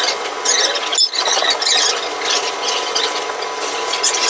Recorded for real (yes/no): yes